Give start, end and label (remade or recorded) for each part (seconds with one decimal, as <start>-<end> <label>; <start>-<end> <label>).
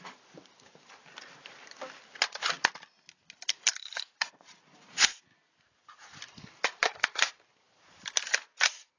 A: 0.0-4.1 recorded; 4.1-5.2 remade; 5.2-9.0 recorded